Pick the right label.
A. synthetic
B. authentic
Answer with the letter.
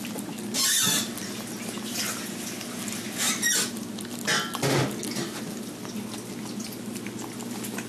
B